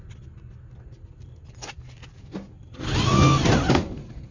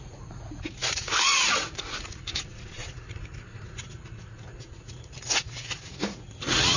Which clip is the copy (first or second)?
second